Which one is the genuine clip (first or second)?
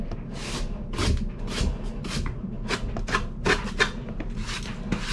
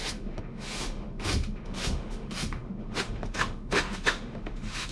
first